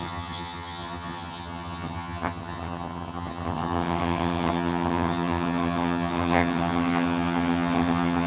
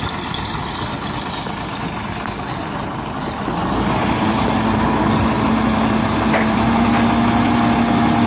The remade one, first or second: first